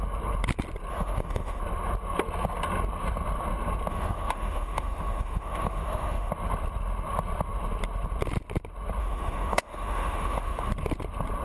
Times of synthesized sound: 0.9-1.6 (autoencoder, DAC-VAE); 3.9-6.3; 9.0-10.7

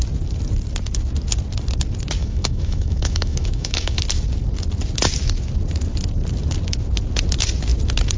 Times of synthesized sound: 2.2-4.0 (autoencoder, DAC-VAE)

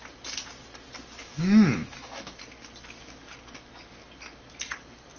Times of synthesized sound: 1.2-2.4 (autoencoder, DAC-VAE)

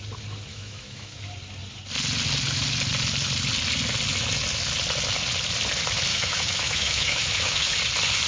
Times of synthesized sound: 0.5-1.2 (autoencoder, DAC-VAE); 6.1-7.7

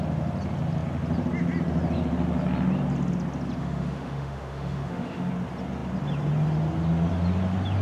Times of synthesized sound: 3.6-5.3 (autoencoder, DAC-VAE)

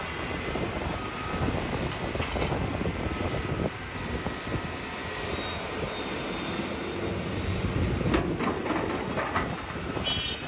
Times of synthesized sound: none